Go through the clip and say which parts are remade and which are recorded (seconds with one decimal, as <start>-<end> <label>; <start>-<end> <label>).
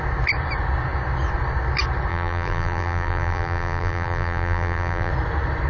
0.0-2.1 recorded; 2.1-5.1 remade; 5.1-5.7 recorded